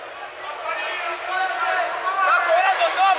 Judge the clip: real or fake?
real